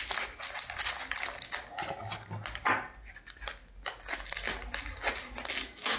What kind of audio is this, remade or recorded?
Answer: recorded